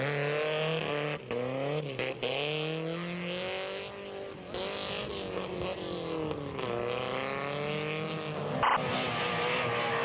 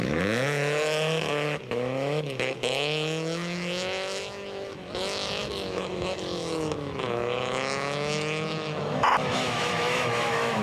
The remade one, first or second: second